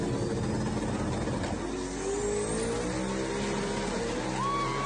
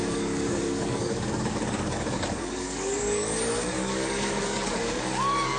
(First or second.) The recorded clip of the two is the first